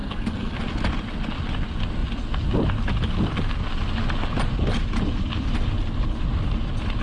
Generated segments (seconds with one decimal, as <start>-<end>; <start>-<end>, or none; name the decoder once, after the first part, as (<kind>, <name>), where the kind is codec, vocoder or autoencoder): 0.0-0.6 (codec, SNAC)